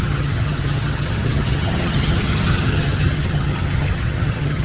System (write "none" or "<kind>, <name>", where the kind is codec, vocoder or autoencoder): vocoder, HiFi-GAN